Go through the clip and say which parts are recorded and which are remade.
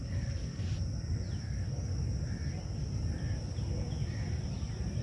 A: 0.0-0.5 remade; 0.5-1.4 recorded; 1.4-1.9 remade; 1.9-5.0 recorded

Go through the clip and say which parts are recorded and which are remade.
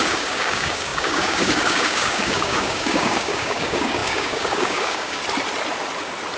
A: 0.0-5.2 remade; 5.2-6.4 recorded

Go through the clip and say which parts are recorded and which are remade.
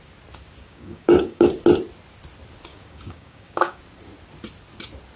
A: 0.0-0.6 recorded; 0.6-1.5 remade; 1.5-2.7 recorded; 2.7-3.8 remade; 3.8-5.2 recorded